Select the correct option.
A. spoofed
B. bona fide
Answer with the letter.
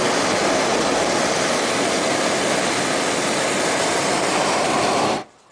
B